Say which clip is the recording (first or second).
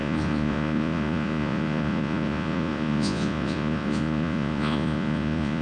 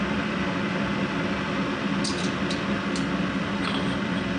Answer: second